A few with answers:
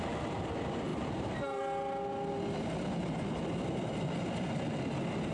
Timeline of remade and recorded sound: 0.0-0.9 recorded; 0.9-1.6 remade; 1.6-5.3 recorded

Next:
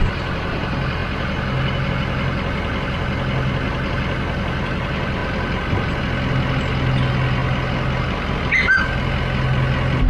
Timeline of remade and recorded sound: 0.0-10.1 recorded

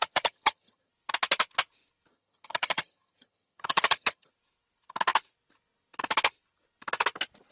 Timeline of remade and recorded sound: 0.0-0.9 remade; 0.9-2.1 recorded; 2.1-4.3 remade; 4.3-7.5 recorded

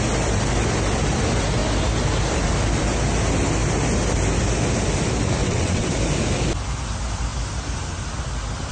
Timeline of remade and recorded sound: 0.0-5.4 recorded; 5.4-5.9 remade; 5.9-8.7 recorded